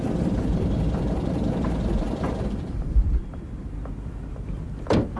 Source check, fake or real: fake